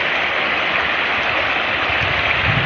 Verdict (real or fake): real